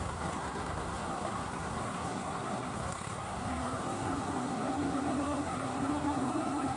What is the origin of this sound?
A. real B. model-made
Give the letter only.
B